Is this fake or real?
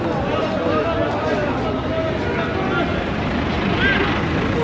real